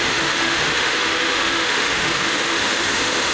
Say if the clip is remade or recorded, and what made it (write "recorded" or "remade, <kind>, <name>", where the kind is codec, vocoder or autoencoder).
remade, autoencoder, DAC-VAE